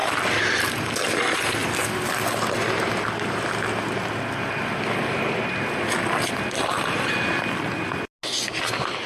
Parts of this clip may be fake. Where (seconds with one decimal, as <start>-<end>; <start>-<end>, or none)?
0.0-0.5